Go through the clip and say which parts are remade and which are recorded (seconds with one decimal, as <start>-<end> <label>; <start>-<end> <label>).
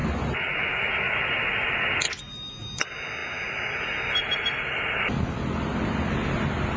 0.0-6.8 recorded